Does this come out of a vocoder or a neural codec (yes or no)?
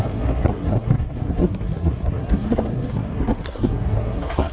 yes